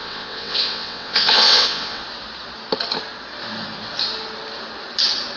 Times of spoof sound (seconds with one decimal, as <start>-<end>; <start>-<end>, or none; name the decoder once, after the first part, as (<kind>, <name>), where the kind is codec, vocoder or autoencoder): 0.0-2.0 (vocoder, WaveNeXt)